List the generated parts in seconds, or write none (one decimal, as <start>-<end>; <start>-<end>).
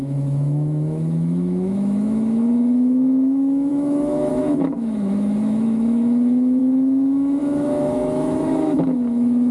0.0-9.5